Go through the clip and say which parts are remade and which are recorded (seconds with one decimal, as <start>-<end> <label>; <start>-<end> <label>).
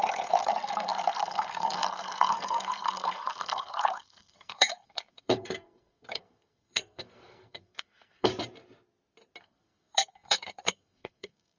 0.0-8.3 remade; 8.3-9.4 recorded; 9.4-11.6 remade